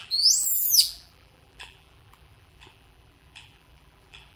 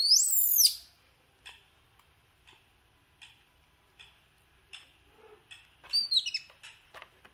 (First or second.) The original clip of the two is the second